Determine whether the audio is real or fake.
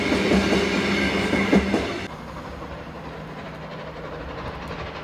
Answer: real